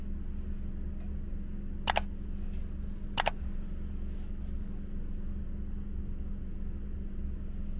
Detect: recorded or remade recorded